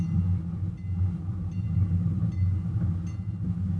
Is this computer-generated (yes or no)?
no